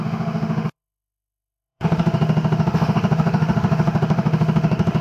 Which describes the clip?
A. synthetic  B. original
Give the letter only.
A